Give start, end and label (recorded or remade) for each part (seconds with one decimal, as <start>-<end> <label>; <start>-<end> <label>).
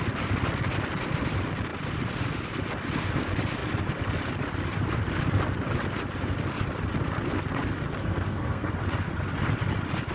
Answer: 0.0-8.0 recorded; 8.0-8.7 remade; 8.7-10.1 recorded